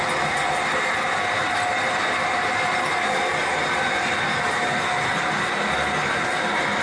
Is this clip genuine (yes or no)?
yes